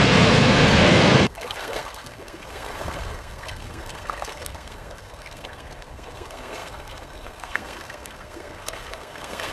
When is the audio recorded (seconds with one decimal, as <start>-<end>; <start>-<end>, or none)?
none